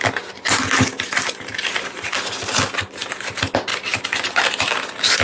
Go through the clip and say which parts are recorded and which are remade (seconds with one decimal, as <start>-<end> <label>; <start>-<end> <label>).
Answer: 0.0-0.9 recorded; 0.9-2.2 remade; 2.2-3.7 recorded; 3.7-5.2 remade